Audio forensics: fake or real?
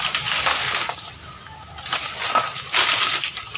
real